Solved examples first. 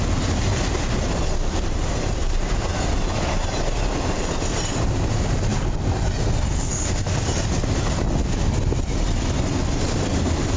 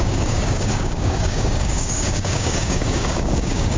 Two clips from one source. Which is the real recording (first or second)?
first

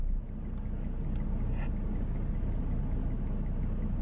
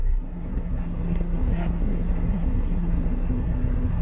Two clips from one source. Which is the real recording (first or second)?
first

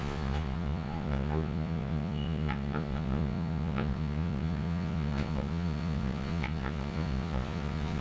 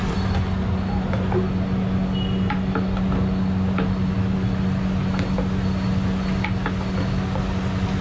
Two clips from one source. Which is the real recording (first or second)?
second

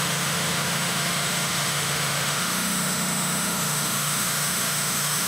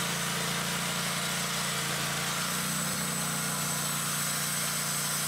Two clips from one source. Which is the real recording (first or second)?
second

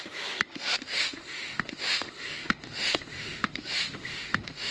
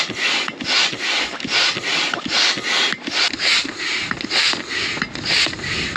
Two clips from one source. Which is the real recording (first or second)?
second